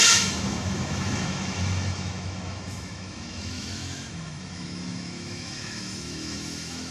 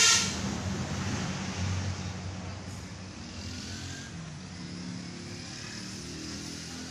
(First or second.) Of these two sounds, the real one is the second